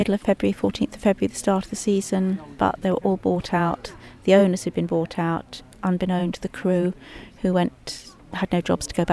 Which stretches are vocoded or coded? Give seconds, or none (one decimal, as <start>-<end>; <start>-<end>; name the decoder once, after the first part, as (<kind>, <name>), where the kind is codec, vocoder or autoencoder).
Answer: 0.0-0.7 (vocoder, Vocos); 2.7-3.9; 6.2-7.2